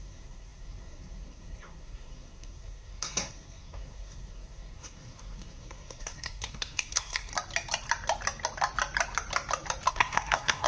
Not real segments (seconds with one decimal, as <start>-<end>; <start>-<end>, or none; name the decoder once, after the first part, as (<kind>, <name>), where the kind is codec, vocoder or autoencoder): 0.0-7.3 (codec, SNAC); 9.9-10.7